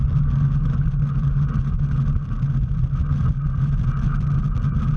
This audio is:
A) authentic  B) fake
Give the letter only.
A